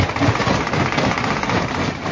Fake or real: real